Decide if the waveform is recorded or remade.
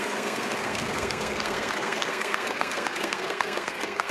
remade